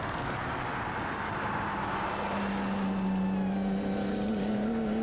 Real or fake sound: real